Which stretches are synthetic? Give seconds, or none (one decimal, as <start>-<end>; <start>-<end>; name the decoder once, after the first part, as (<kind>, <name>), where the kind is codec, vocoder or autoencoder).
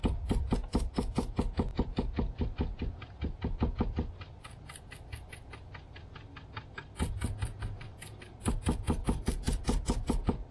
0.0-0.5 (vocoder, BigVGAN v2)